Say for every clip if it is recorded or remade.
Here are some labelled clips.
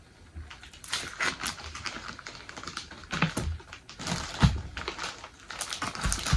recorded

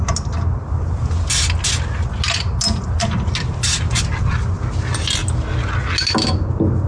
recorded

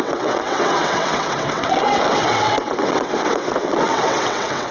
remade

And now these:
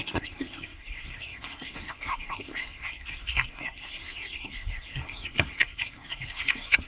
remade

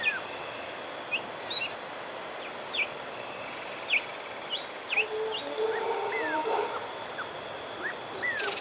recorded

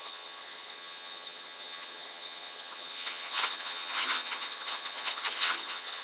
remade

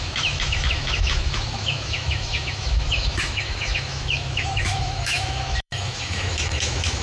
remade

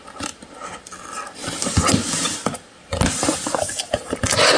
recorded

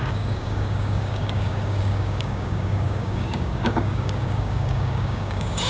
remade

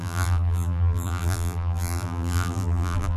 remade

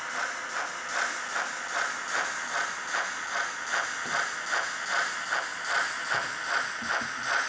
recorded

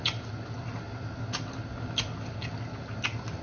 recorded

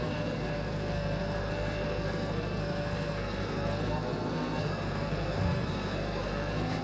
remade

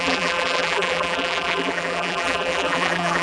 remade